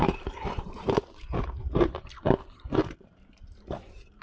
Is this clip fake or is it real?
fake